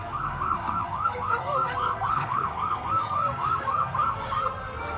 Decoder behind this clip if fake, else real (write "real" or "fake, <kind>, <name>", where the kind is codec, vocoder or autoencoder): fake, codec, SNAC